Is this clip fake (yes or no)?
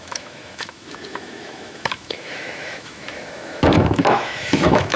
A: yes